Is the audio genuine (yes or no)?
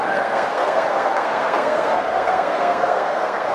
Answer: no